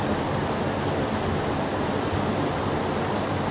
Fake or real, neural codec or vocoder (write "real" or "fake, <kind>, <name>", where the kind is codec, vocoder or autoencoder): real